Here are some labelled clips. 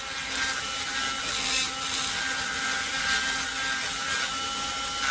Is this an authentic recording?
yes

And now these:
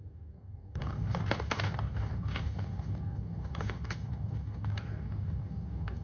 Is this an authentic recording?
no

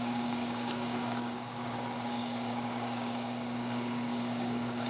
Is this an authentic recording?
no